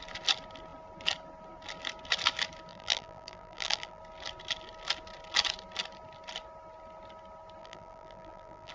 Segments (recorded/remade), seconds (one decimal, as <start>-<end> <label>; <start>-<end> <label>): 0.0-2.7 recorded; 2.7-4.0 remade; 4.0-7.6 recorded; 7.6-8.7 remade